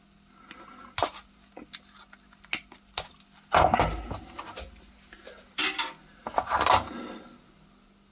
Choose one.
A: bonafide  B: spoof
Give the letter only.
A